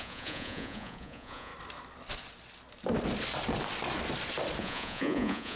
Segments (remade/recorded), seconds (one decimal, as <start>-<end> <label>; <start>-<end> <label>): 0.0-1.5 remade; 1.5-4.6 recorded; 4.6-5.6 remade